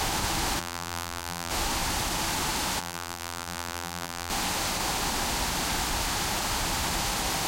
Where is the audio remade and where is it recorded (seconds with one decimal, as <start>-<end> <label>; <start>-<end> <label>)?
0.0-0.6 recorded; 0.6-1.5 remade; 1.5-2.8 recorded; 2.8-4.3 remade; 4.3-7.5 recorded